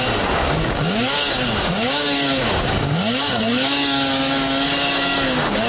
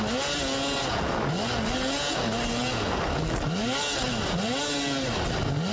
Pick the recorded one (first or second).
second